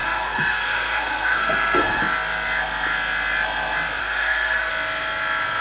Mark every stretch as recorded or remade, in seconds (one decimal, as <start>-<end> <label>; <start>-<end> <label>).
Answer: 0.0-2.0 remade; 2.0-4.0 recorded; 4.0-4.7 remade; 4.7-5.6 recorded